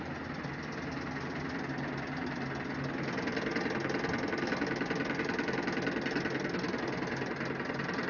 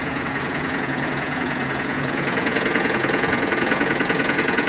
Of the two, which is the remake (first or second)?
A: second